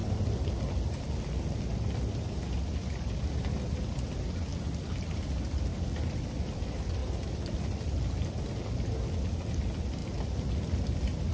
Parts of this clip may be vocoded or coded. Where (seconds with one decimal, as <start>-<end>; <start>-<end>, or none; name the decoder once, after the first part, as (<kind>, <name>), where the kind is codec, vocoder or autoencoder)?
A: none